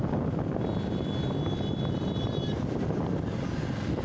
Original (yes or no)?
yes